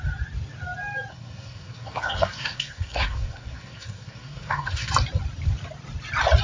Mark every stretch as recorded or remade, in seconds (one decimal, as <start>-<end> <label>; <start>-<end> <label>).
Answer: 0.0-1.1 recorded; 1.1-4.9 remade; 4.9-6.4 recorded